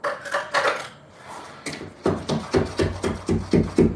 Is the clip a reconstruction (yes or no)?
no